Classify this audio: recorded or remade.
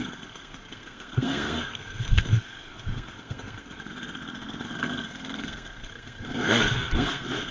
remade